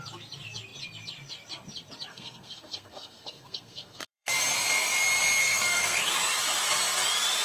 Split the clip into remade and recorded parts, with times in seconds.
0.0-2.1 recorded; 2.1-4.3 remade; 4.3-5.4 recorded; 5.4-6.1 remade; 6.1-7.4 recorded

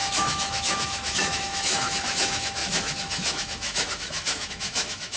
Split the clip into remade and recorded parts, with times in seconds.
0.0-5.2 remade

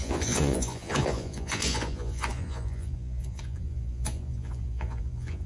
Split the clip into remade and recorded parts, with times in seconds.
0.0-5.5 remade

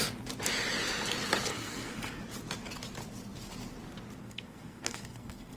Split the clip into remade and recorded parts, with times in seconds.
0.0-1.5 recorded; 1.5-2.2 remade; 2.2-4.2 recorded; 4.2-5.6 remade

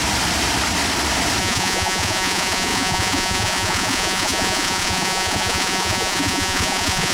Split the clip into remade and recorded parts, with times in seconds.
0.0-1.4 recorded; 1.4-7.1 remade

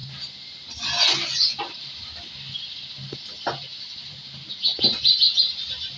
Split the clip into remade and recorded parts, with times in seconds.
0.0-6.0 recorded

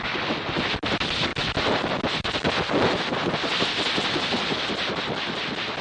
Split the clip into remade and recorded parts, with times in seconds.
0.0-5.8 recorded

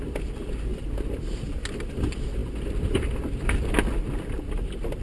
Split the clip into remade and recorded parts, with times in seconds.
0.0-5.0 recorded